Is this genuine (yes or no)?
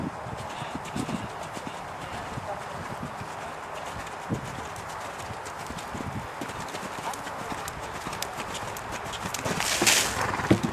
yes